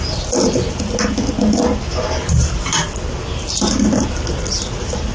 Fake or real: real